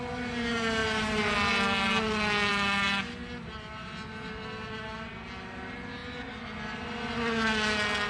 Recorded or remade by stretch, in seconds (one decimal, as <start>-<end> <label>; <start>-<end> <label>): 0.0-8.1 recorded

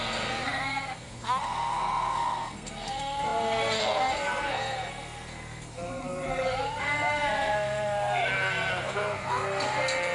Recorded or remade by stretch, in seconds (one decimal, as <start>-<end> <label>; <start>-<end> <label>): 0.0-10.1 remade

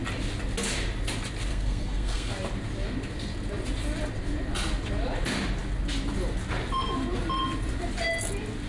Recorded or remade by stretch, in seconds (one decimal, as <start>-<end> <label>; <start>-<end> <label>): 0.0-1.5 recorded; 1.5-2.3 remade; 2.3-8.7 recorded

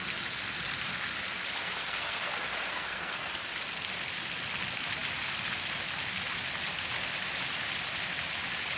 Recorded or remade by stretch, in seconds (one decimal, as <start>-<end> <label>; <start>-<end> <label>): 0.0-1.6 recorded; 1.6-2.3 remade; 2.3-2.7 recorded; 2.7-3.3 remade; 3.3-8.8 recorded

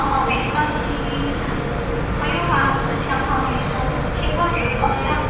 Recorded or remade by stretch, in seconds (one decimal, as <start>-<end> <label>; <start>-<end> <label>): 0.0-4.6 recorded; 4.6-5.3 remade

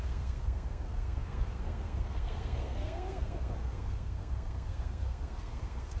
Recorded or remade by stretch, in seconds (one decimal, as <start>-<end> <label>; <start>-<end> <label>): 0.0-6.0 remade

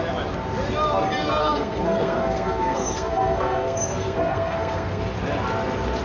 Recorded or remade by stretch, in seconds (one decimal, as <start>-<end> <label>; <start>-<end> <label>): 0.0-1.4 recorded; 1.4-5.0 remade; 5.0-6.0 recorded

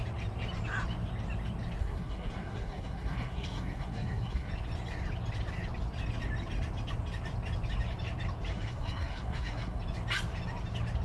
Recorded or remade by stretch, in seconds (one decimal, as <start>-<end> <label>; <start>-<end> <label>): 0.0-1.8 recorded; 1.8-4.5 remade; 4.5-8.5 recorded; 8.5-9.8 remade; 9.8-11.0 recorded